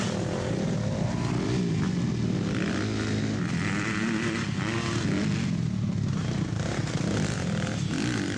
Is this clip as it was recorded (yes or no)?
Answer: yes